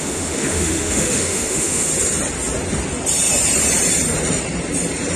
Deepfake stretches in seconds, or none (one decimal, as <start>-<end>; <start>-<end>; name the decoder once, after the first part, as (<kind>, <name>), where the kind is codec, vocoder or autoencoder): 0.0-1.9 (autoencoder, DAC-VAE)